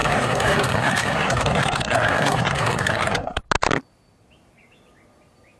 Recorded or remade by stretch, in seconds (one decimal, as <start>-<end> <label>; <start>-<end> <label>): 0.0-3.4 remade; 3.4-5.6 recorded